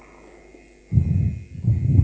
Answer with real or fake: real